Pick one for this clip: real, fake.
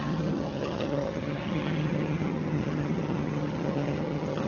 fake